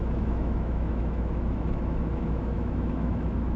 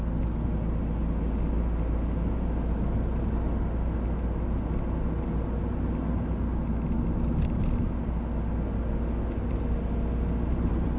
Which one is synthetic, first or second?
first